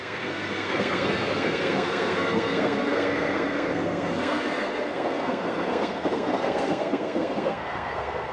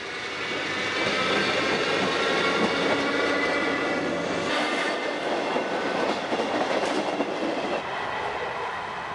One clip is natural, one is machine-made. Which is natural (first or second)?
second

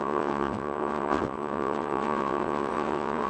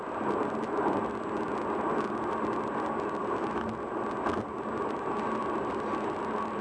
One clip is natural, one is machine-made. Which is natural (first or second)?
second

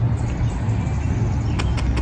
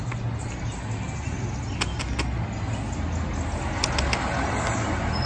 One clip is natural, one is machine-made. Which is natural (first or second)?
second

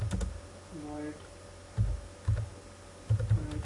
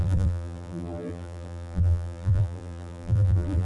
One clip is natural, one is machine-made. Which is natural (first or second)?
first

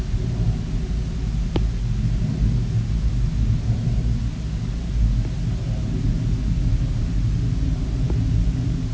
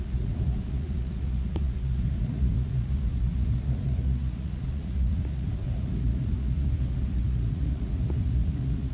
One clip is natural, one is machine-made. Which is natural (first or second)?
first